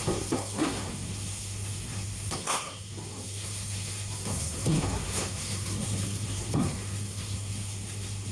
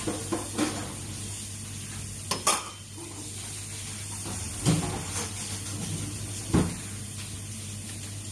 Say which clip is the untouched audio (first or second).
second